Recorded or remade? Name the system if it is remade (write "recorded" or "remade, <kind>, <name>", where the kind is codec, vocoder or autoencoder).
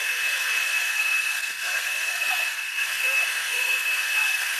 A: remade, codec, SNAC